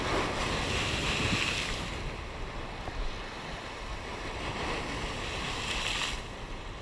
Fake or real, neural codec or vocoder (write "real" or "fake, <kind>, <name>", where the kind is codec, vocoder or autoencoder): real